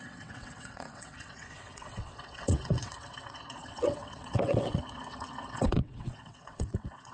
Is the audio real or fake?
fake